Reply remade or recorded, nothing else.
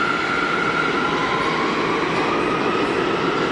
recorded